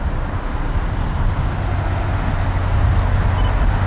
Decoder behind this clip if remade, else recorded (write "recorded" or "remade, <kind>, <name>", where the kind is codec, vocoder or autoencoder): recorded